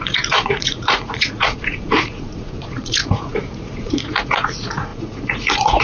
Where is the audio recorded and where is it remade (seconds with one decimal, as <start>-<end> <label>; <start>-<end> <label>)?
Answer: 0.0-5.8 remade